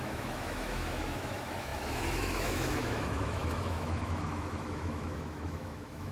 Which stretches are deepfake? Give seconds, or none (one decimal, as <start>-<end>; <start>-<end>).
0.0-6.1